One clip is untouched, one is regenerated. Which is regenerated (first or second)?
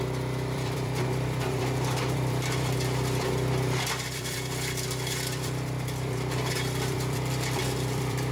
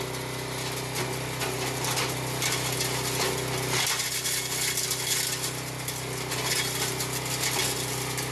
first